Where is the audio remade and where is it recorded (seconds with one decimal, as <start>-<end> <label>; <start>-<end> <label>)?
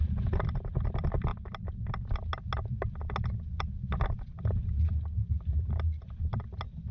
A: 0.0-6.9 recorded